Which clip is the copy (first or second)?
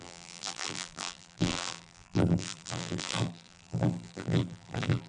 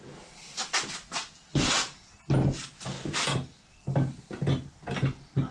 first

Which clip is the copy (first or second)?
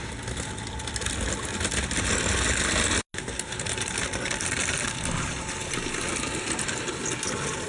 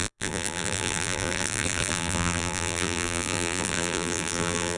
second